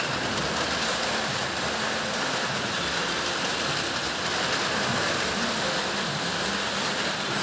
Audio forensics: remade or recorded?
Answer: recorded